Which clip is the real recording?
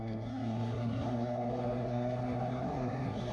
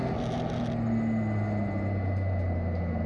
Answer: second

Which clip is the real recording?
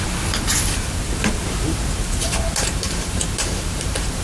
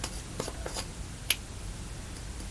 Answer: second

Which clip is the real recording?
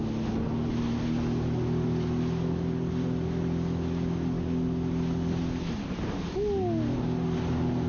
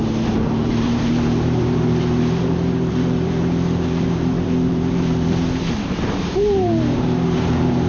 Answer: first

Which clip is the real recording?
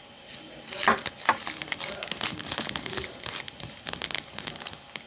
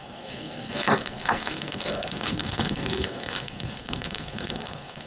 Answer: first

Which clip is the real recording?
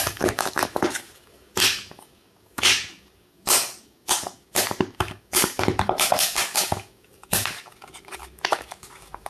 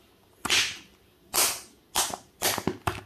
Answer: second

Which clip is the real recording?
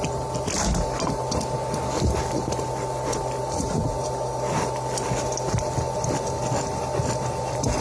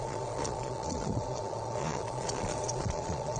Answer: first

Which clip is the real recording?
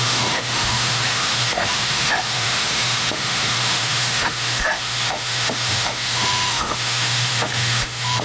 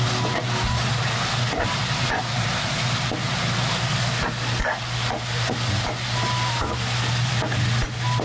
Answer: second